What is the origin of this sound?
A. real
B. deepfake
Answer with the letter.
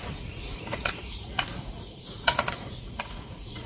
B